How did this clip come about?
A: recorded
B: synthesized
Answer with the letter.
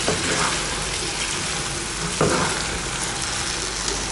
A